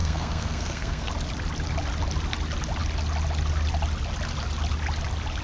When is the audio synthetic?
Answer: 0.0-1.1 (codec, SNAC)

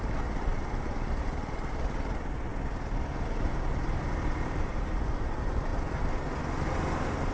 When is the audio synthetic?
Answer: none

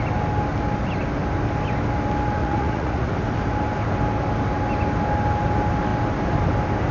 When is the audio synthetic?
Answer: 2.4-3.1 (vocoder, Vocos)